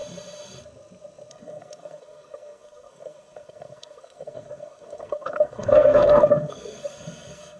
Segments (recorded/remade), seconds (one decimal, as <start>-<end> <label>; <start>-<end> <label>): 0.0-1.3 recorded; 1.3-7.6 remade